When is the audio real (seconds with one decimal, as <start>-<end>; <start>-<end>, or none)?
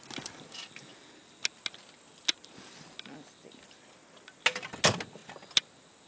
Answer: 0.0-6.1